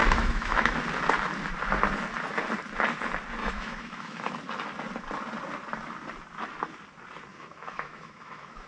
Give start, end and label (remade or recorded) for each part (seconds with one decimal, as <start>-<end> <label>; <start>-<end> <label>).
0.0-0.8 remade; 0.8-3.4 recorded; 3.4-4.3 remade; 4.3-7.3 recorded; 7.3-8.7 remade